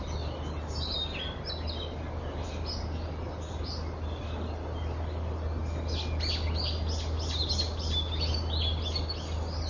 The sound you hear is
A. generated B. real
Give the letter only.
B